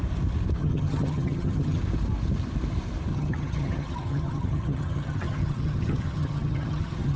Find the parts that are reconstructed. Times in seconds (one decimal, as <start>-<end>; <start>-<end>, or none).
0.6-1.8; 3.1-7.2